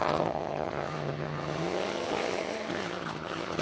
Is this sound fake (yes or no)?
yes